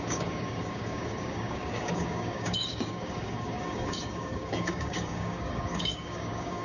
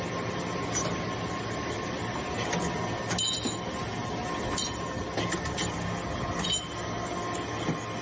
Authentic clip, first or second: second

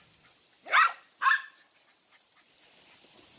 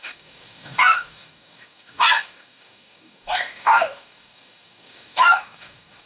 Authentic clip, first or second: first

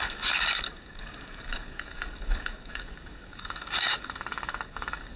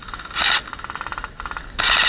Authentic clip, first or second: second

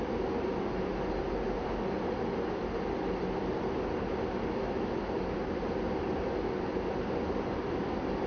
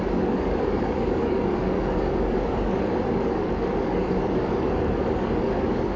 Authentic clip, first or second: first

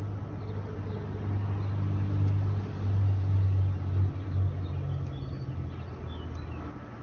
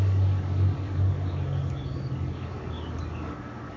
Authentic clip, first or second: first